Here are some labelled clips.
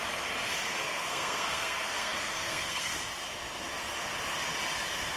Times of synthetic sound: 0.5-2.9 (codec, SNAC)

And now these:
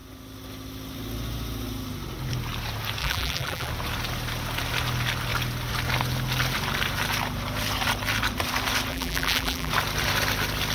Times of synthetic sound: 3.0-3.7 (vocoder, BigVGAN v2); 8.9-9.7

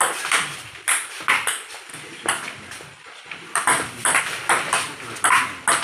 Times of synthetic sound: 1.9-4.2 (vocoder, BigVGAN v2)